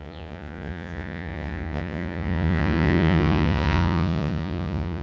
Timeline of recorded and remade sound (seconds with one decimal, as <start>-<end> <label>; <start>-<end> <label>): 0.0-5.0 remade